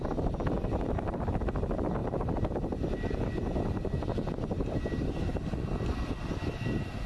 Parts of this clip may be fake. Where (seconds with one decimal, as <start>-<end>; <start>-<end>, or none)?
none